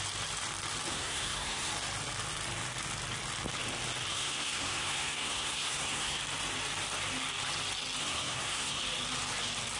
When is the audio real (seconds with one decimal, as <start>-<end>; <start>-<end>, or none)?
0.0-0.9; 1.7-4.1; 6.2-8.0; 8.8-9.8